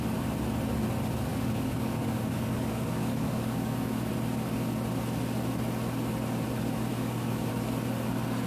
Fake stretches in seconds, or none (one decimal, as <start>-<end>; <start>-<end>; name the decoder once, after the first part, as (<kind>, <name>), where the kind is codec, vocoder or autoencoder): 1.3-4.1 (codec, DAC); 6.9-7.5

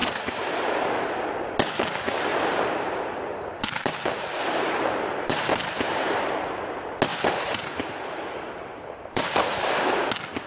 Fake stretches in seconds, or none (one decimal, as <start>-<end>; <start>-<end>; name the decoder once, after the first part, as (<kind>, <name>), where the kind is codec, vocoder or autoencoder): 0.0-1.2 (vocoder, BigVGAN v2); 2.3-6.3; 7.1-10.1

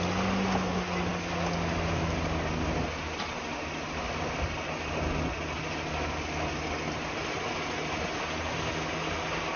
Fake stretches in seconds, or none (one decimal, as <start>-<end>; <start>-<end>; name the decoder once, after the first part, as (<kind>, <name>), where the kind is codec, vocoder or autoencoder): none

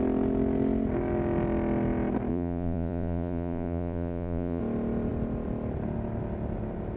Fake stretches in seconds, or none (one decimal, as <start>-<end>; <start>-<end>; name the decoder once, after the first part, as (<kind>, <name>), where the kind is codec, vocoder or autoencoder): 2.3-4.6 (vocoder, Vocos)

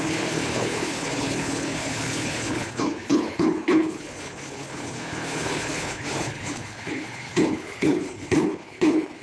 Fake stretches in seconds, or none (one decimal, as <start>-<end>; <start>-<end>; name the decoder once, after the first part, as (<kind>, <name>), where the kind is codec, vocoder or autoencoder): 0.0-9.2 (codec, HILCodec)

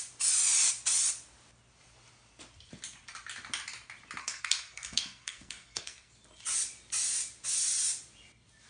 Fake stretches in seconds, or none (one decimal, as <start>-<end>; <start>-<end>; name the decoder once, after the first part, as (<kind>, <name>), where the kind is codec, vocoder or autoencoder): 4.2-6.1 (codec, SNAC)